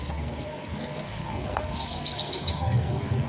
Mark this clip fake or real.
fake